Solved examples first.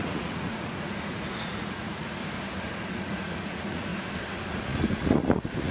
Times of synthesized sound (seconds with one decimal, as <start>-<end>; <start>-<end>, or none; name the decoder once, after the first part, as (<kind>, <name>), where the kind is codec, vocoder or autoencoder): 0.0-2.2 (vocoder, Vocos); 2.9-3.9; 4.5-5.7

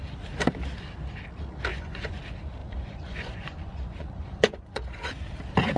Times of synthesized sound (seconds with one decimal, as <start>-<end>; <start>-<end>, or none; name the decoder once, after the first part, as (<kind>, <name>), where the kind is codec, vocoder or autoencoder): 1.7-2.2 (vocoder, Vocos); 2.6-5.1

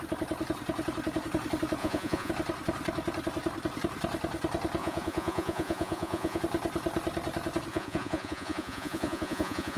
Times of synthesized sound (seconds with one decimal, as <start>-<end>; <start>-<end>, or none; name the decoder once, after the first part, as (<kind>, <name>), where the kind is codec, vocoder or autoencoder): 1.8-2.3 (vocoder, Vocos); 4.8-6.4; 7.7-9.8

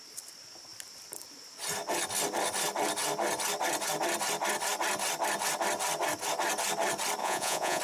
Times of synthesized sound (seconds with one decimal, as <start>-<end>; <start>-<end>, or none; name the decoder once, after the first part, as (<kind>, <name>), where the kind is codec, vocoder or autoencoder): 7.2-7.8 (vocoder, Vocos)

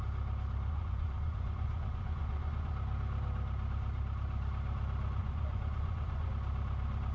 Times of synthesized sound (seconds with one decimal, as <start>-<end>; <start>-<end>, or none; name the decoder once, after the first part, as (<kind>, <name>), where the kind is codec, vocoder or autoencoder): 0.7-2.7 (vocoder, Vocos); 5.2-6.3

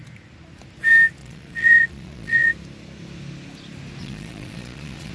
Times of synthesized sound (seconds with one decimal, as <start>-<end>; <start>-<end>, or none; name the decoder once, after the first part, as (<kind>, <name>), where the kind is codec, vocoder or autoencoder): 1.2-2.5 (vocoder, Vocos); 4.0-5.1